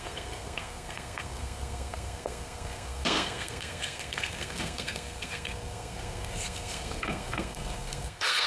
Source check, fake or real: fake